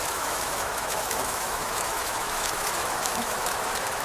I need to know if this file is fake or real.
fake